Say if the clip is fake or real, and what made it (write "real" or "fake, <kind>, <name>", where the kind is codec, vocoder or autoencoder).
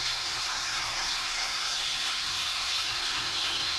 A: fake, codec, SNAC